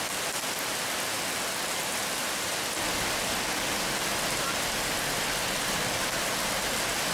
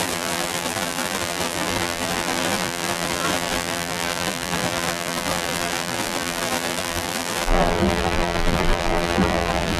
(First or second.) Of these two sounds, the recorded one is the first